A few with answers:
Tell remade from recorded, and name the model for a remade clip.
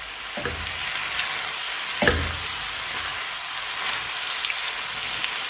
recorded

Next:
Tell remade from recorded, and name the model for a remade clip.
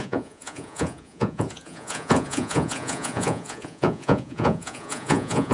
remade, vocoder, Vocos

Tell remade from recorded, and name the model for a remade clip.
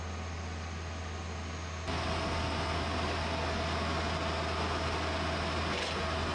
recorded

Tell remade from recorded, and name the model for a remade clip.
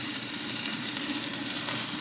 remade, vocoder, BigVGAN v2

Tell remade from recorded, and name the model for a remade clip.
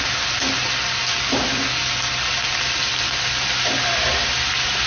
recorded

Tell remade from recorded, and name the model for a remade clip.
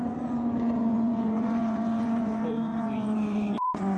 remade, vocoder, Vocos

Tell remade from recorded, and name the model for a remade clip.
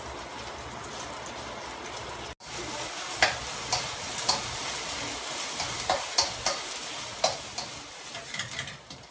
recorded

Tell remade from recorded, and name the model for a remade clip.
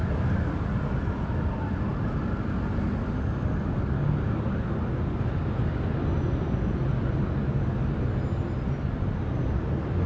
recorded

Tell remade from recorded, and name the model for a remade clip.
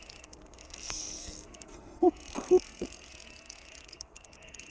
remade, codec, SNAC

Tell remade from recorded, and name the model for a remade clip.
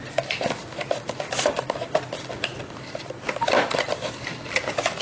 remade, vocoder, BigVGAN v2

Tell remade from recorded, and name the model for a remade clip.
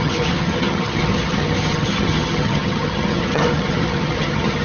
remade, vocoder, HiFi-GAN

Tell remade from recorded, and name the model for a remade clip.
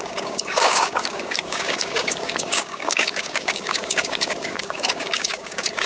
remade, codec, DAC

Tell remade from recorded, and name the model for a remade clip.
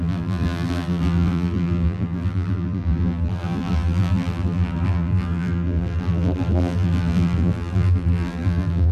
remade, vocoder, BigVGAN v2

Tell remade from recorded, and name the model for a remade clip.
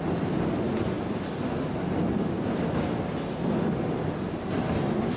recorded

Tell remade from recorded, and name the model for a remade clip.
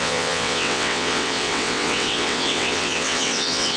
remade, vocoder, WaveNeXt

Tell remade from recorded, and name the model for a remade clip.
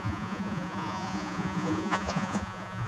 remade, vocoder, Vocos